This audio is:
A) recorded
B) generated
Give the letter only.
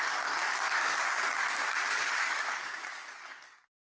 B